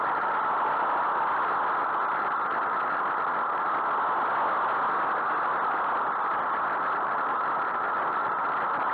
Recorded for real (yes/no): yes